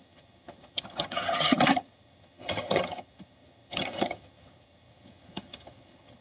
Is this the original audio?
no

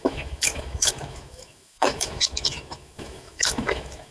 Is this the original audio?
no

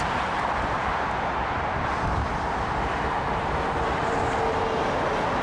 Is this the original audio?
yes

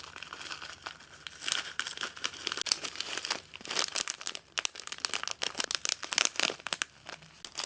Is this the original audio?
yes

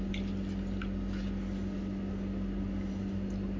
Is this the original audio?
yes